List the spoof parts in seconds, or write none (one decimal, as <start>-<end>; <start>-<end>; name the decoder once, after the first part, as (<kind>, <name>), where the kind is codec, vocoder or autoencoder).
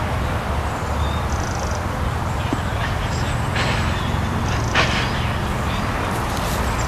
2.7-3.3 (vocoder, BigVGAN v2)